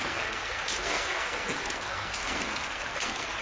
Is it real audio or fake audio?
fake